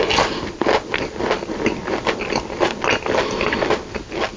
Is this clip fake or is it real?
real